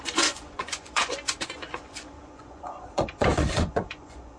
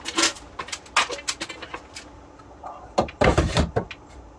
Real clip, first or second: second